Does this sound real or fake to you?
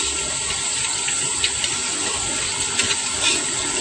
real